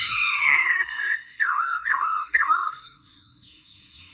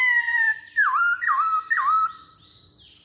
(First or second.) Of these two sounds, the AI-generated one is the first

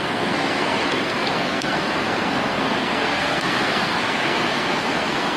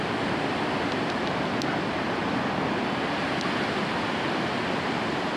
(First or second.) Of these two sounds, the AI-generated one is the first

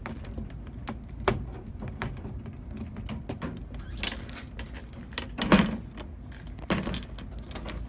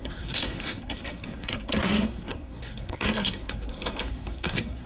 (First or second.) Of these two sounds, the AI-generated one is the second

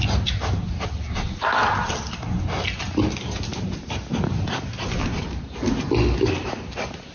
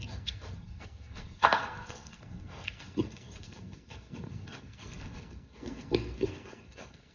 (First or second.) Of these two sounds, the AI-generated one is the second